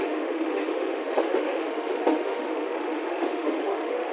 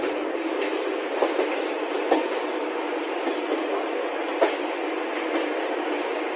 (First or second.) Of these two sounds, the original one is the second